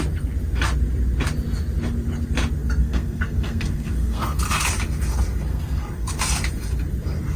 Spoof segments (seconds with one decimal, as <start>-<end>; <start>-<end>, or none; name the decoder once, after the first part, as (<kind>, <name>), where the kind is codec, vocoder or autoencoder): 2.6-4.4 (codec, SNAC); 5.5-6.2